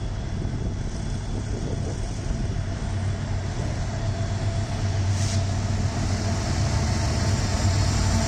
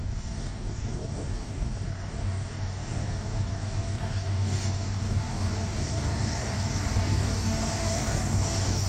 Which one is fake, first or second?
second